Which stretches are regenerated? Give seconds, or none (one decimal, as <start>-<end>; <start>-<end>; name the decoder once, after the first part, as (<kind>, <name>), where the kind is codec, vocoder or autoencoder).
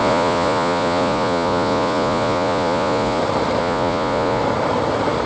0.0-3.2 (vocoder, Vocos); 3.6-4.4